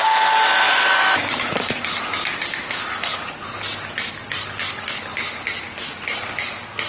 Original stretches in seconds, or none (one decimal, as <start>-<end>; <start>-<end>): 0.0-4.2; 4.9-6.9